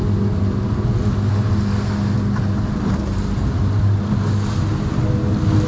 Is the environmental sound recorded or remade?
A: recorded